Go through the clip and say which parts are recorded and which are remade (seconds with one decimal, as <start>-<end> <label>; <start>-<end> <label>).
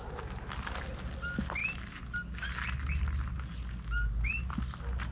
0.0-5.1 recorded